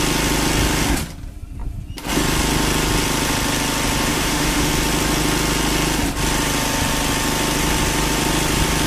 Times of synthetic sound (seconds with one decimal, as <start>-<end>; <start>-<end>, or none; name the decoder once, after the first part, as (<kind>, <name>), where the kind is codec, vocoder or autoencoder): 4.1-4.7 (autoencoder, DAC-VAE)

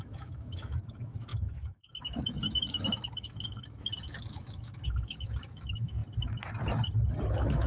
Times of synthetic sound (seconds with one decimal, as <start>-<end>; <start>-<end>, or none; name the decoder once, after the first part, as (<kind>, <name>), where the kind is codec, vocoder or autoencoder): 0.0-6.0 (autoencoder, DAC-VAE); 7.2-7.7

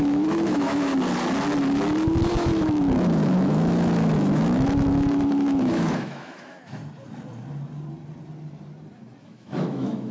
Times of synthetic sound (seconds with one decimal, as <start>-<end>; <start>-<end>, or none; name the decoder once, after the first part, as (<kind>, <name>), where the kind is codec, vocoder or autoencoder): 0.0-0.9 (autoencoder, DAC-VAE); 2.3-6.8; 9.2-10.1

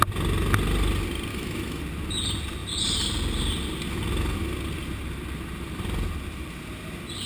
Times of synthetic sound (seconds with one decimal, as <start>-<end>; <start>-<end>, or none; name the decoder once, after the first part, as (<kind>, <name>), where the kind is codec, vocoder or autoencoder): 1.3-1.8 (autoencoder, DAC-VAE)

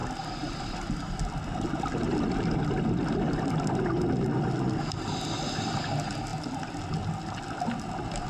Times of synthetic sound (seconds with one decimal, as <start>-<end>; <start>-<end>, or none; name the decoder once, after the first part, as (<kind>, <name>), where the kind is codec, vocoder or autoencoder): none